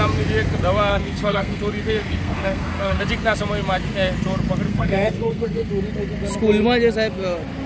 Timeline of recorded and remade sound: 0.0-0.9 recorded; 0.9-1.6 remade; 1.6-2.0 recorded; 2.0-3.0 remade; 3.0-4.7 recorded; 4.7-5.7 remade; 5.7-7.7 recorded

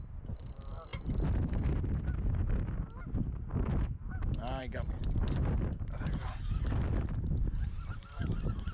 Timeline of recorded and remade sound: 0.0-8.7 recorded

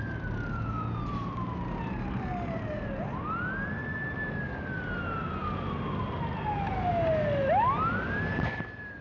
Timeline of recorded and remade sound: 0.0-9.0 recorded

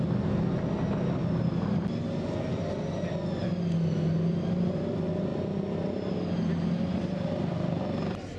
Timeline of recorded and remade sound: 0.0-8.4 recorded